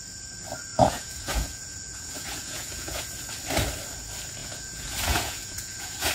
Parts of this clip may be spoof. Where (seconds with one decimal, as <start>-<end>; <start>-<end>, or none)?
0.7-3.1; 4.4-6.1